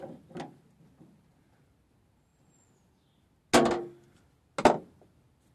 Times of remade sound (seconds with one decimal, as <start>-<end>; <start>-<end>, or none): none